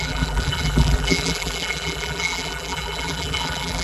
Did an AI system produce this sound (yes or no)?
yes